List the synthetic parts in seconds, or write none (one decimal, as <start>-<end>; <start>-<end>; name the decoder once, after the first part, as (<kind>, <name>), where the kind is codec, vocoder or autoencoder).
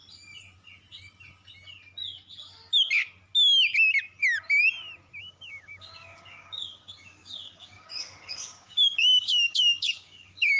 5.2-10.6 (codec, DAC)